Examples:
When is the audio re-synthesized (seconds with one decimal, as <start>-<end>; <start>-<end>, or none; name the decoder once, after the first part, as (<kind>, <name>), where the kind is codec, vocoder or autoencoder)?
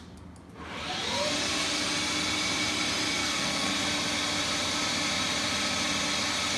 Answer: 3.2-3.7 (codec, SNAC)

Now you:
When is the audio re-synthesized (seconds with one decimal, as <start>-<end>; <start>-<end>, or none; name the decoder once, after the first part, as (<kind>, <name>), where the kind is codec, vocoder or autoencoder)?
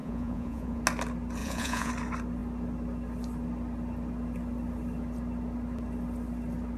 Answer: 0.0-0.8 (vocoder, Vocos); 1.4-1.9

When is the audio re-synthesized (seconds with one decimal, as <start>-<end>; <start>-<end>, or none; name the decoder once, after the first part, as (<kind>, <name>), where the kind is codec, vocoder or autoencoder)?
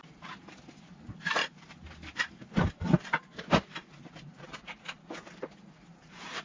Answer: 0.0-1.4 (vocoder, BigVGAN v2); 4.3-6.4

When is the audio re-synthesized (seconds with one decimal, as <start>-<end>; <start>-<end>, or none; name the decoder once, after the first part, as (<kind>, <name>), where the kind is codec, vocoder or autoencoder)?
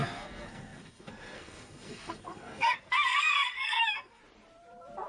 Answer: 0.0-4.2 (codec, SNAC)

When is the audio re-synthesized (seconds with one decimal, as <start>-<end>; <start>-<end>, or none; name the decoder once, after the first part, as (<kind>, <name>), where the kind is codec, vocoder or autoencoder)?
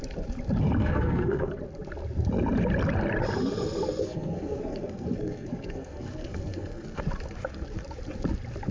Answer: 0.8-1.5 (codec, SNAC); 4.0-7.0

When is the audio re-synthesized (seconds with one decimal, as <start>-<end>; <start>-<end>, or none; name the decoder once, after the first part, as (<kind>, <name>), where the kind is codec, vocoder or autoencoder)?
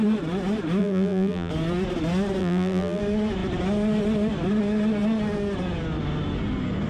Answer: 0.8-1.5 (vocoder, BigVGAN v2); 2.4-3.0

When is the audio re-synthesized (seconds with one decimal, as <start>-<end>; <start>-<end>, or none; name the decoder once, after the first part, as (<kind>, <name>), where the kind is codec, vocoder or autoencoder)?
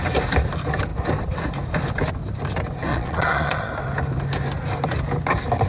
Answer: 2.9-3.7 (vocoder, Vocos)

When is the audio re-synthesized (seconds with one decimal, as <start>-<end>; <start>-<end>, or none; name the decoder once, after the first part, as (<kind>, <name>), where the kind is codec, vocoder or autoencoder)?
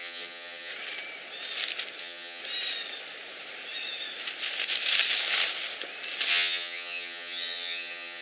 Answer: 0.0-0.7 (vocoder, HiFi-GAN); 2.0-2.4; 6.3-8.2